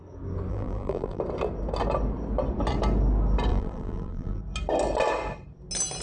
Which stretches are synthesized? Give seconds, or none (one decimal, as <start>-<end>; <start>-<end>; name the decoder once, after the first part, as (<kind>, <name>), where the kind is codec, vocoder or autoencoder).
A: 0.5-1.2 (vocoder, BigVGAN v2); 3.5-4.4